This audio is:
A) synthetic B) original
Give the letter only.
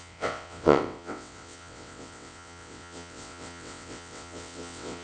A